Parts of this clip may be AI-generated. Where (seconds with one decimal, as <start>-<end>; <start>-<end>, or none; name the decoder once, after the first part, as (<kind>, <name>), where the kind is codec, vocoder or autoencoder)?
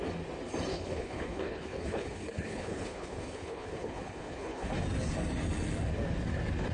0.7-4.7 (codec, HILCodec)